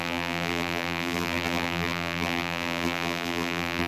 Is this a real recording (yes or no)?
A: no